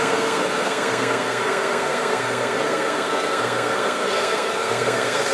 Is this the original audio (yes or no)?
no